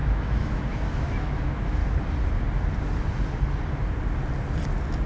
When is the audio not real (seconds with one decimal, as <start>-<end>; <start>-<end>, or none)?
0.0-1.8